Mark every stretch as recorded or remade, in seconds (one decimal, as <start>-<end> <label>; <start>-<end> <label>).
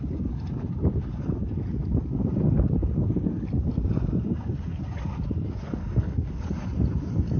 0.0-5.8 recorded; 5.8-6.4 remade; 6.4-7.4 recorded